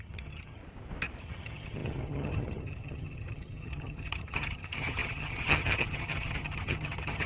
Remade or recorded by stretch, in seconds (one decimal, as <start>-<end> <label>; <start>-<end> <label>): 0.0-0.6 remade; 0.6-1.2 recorded; 1.2-7.3 remade